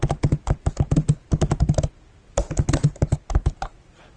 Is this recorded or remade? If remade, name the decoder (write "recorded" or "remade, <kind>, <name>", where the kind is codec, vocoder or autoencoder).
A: recorded